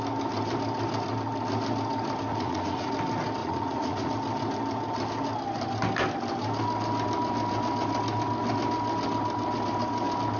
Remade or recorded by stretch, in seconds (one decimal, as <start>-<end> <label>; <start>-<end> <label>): 0.0-2.3 recorded; 2.3-2.9 remade; 2.9-3.4 recorded; 3.4-4.1 remade; 4.1-10.4 recorded

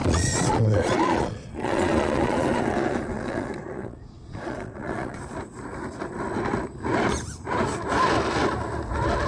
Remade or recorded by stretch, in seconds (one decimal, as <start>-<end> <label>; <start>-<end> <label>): 0.0-5.2 remade; 5.2-9.3 recorded

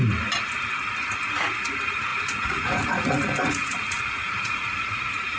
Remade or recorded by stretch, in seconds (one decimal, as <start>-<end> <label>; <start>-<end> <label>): 0.0-2.1 recorded; 2.1-5.4 remade

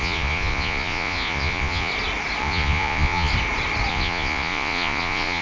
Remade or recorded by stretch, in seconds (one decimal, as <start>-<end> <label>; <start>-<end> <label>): 0.0-1.9 remade; 1.9-2.4 recorded; 2.4-3.3 remade; 3.3-3.9 recorded; 3.9-5.4 remade

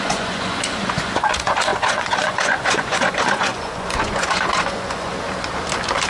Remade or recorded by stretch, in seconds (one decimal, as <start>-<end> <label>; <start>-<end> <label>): 0.0-5.1 remade; 5.1-6.1 recorded

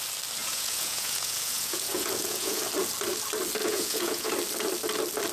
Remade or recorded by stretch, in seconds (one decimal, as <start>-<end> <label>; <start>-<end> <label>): 0.0-0.4 recorded; 0.4-2.6 remade; 2.6-3.6 recorded; 3.6-4.3 remade; 4.3-5.3 recorded